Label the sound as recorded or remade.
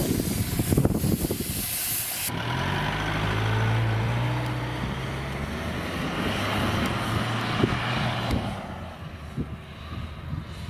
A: recorded